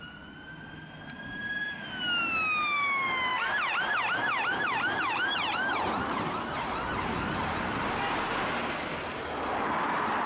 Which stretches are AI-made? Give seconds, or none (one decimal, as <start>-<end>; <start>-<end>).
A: 3.3-4.0; 4.5-5.7